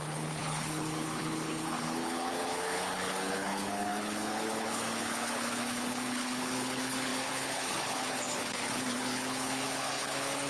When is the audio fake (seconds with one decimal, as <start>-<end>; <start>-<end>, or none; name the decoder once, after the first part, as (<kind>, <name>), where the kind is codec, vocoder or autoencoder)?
0.0-10.5 (codec, HILCodec)

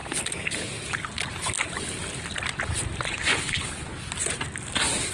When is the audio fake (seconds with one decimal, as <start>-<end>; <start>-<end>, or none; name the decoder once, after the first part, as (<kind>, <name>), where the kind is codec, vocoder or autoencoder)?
3.1-3.7 (codec, HILCodec)